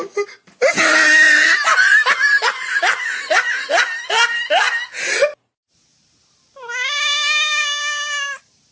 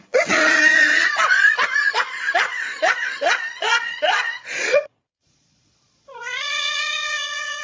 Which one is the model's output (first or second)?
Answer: second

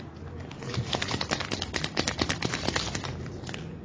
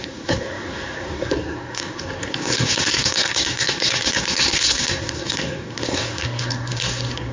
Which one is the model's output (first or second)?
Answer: second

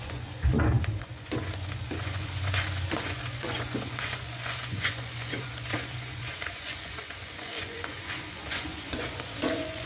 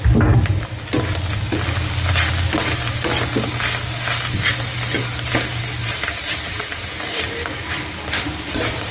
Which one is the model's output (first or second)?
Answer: first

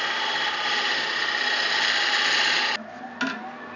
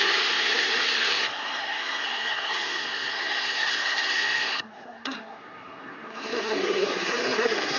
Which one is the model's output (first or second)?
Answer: second